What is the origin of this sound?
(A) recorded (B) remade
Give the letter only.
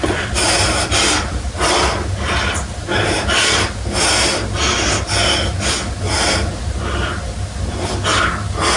A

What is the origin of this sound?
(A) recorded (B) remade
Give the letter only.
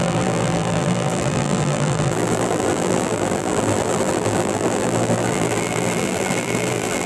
B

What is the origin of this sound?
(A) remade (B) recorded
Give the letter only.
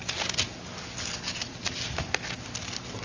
B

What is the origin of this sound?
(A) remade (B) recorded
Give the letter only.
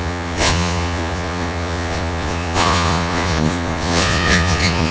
A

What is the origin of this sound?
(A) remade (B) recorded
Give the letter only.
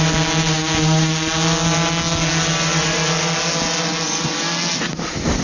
B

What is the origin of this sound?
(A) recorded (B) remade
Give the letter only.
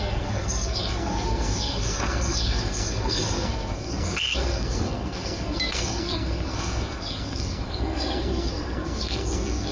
B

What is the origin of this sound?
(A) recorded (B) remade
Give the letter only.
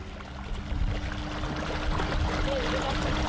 A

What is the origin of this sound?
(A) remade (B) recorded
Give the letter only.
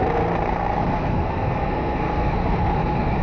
A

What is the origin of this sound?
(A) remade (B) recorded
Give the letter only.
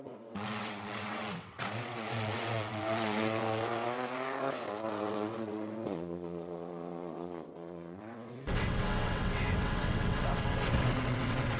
A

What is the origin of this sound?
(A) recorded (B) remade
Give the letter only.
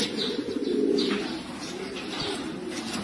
A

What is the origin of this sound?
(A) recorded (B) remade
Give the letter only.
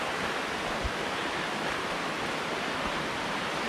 A